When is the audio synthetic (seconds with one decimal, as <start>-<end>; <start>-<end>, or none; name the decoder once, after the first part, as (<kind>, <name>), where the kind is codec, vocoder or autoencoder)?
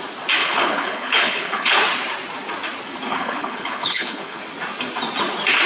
0.4-1.8 (codec, HILCodec); 3.1-4.4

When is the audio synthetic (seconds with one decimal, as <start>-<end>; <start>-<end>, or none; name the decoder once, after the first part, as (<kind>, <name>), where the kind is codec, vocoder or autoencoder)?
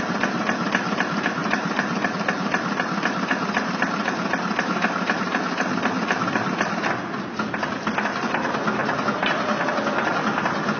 1.4-2.1 (vocoder, BigVGAN v2); 8.8-9.7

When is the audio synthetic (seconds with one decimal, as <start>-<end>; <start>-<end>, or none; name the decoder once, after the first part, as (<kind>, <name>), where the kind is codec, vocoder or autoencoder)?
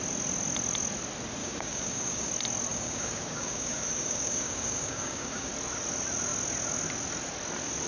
1.4-2.3 (codec, DAC); 2.7-5.5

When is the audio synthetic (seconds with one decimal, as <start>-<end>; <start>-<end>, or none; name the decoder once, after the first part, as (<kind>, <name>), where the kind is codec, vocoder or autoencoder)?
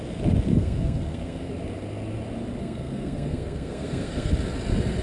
0.5-1.5 (codec, SNAC); 2.6-4.3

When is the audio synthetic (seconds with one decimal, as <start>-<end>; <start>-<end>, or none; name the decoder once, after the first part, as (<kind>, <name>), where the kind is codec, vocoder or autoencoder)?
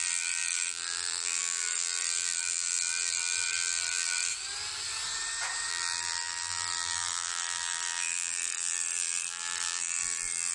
0.0-4.3 (vocoder, BigVGAN v2); 5.7-10.5